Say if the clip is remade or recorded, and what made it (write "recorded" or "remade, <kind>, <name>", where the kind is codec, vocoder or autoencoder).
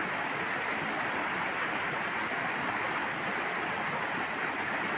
recorded